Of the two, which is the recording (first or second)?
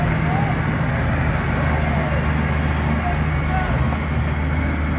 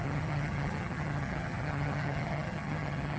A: first